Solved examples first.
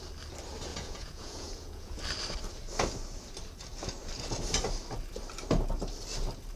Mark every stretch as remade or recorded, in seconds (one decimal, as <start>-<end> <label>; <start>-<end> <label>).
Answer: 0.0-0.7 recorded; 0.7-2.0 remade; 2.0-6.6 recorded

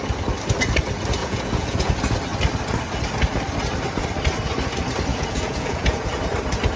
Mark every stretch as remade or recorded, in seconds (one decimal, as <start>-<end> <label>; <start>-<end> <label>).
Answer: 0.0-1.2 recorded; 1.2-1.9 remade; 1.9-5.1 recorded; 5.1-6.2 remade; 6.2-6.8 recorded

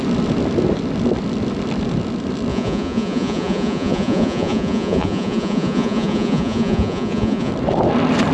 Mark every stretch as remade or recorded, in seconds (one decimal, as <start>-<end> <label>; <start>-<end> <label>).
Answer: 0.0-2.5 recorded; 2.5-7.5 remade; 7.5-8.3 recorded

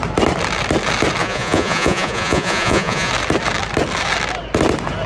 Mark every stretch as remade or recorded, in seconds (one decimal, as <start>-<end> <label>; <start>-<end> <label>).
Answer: 0.0-1.2 recorded; 1.2-3.1 remade; 3.1-5.1 recorded